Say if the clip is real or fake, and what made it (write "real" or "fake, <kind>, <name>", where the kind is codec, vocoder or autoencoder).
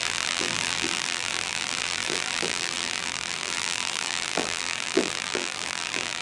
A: fake, vocoder, BigVGAN v2